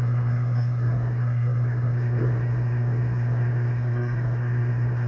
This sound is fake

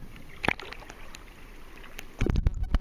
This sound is real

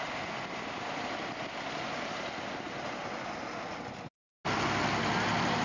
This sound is real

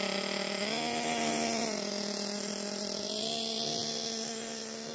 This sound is real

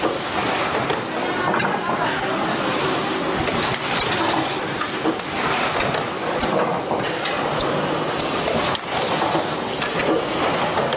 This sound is real